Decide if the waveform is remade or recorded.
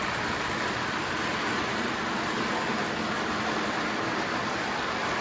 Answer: recorded